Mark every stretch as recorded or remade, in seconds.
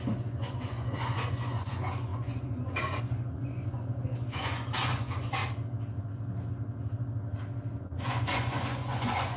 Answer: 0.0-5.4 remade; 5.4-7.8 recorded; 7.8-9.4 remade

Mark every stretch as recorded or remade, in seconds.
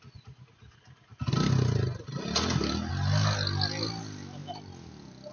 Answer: 0.0-5.3 recorded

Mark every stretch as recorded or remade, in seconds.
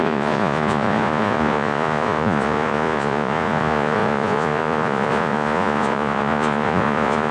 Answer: 0.0-7.3 remade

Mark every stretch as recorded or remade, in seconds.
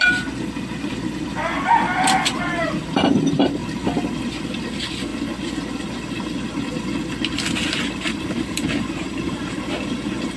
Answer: 0.0-0.9 remade; 0.9-2.4 recorded; 2.4-3.6 remade; 3.6-4.4 recorded; 4.4-5.1 remade; 5.1-7.7 recorded; 7.7-10.4 remade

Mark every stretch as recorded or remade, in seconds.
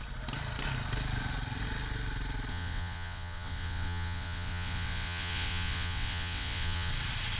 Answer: 0.0-2.5 recorded; 2.5-6.9 remade; 6.9-7.4 recorded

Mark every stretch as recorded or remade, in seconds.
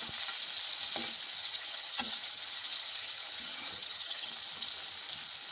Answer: 0.0-1.4 recorded; 1.4-4.3 remade; 4.3-5.5 recorded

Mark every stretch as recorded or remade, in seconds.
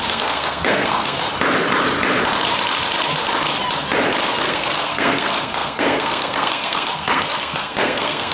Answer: 0.0-1.3 remade; 1.3-4.4 recorded; 4.4-8.3 remade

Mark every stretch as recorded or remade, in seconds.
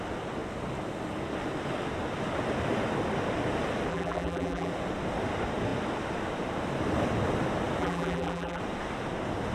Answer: 0.0-3.9 recorded; 3.9-4.7 remade; 4.7-7.8 recorded; 7.8-8.6 remade; 8.6-9.5 recorded